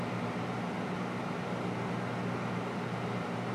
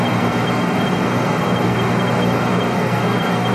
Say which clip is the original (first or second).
first